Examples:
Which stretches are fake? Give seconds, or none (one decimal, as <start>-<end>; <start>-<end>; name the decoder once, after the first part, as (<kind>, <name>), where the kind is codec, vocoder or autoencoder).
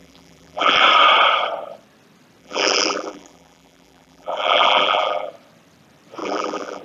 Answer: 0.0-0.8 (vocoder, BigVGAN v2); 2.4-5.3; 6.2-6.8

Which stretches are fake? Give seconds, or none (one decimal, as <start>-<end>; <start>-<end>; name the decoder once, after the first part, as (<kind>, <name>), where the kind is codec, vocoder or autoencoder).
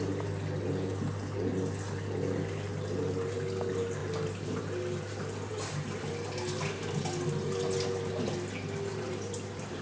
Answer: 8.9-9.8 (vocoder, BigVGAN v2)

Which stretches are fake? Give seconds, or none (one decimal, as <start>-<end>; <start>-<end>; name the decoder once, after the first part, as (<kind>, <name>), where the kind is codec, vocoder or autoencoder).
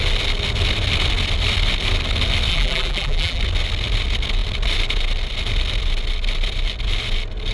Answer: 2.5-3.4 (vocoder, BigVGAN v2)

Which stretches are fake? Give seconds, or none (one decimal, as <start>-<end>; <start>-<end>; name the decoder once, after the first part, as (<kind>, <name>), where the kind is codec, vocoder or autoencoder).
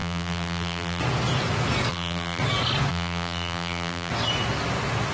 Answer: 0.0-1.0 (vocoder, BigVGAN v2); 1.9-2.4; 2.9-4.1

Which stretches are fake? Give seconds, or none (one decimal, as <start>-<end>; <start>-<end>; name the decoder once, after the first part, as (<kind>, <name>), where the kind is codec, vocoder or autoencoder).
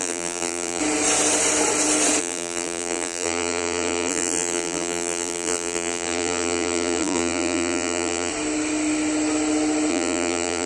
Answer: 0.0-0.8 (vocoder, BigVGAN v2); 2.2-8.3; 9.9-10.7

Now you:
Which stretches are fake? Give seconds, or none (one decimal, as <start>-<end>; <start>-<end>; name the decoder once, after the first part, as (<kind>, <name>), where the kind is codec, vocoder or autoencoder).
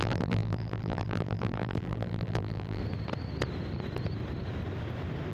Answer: 0.0-2.8 (vocoder, BigVGAN v2)